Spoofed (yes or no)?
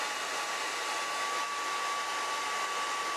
no